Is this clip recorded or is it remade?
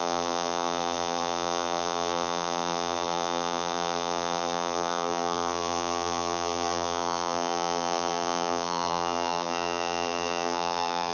remade